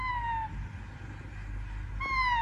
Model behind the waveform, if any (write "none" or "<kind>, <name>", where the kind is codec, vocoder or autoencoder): none